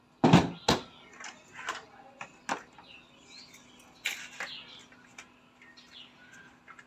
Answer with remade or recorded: recorded